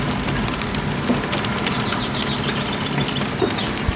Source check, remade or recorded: recorded